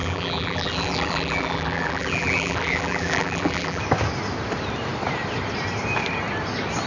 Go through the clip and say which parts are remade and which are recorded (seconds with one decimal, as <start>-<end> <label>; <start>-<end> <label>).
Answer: 0.0-3.8 remade; 3.8-6.9 recorded